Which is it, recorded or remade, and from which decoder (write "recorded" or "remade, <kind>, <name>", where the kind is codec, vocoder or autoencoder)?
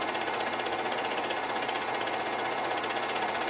remade, vocoder, Vocos